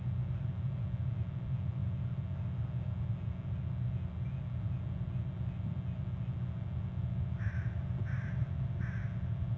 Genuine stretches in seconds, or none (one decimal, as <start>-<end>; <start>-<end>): 0.0-9.6